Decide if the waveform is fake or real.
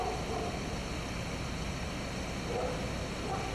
real